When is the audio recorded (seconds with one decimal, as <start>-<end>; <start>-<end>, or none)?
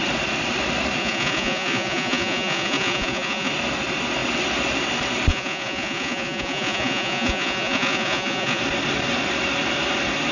0.0-1.0; 3.5-5.3; 8.6-10.3